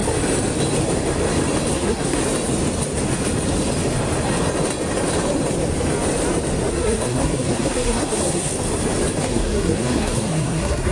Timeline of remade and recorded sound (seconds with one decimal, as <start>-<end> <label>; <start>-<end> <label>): 0.0-1.7 recorded; 1.7-2.2 remade; 2.2-6.7 recorded; 6.7-8.5 remade; 8.5-9.2 recorded; 9.2-10.9 remade